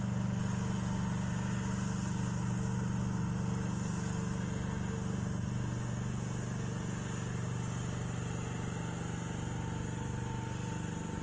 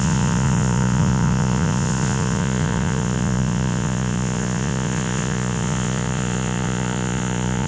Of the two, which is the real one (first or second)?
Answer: first